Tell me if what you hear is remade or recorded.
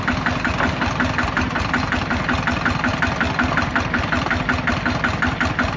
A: recorded